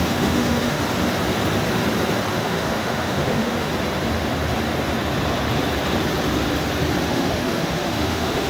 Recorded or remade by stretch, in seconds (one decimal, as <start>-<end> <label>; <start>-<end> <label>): 0.0-0.8 remade; 0.8-2.3 recorded; 2.3-3.7 remade; 3.7-7.1 recorded; 7.1-8.5 remade